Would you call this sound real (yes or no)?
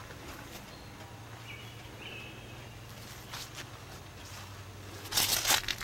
yes